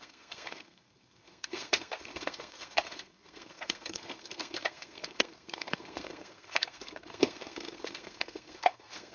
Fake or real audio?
fake